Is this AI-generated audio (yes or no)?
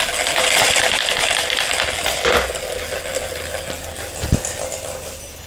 no